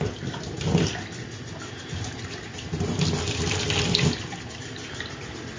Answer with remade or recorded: recorded